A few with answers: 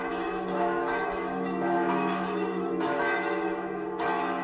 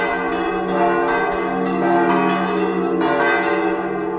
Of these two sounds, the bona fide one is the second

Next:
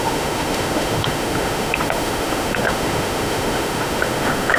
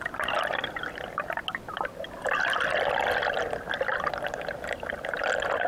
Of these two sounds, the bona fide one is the second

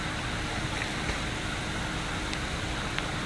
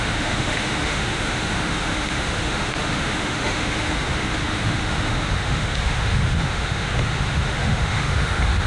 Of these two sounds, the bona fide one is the first